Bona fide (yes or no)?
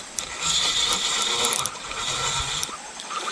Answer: no